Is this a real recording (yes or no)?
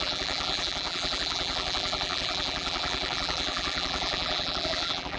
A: no